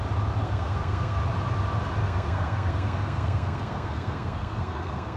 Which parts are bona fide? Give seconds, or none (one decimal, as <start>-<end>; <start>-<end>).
0.0-0.4; 1.2-2.0